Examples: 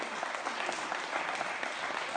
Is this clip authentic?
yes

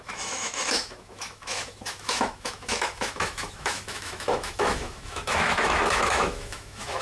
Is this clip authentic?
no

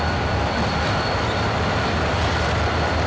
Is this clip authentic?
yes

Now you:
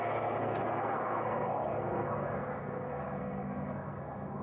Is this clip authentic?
no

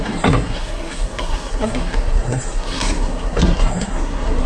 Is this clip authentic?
no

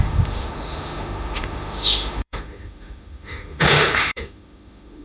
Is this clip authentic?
no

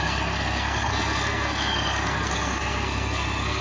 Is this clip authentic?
no